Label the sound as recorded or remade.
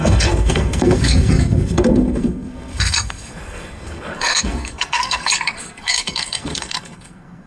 remade